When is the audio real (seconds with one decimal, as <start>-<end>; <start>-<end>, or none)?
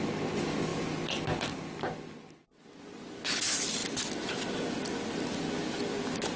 0.0-6.4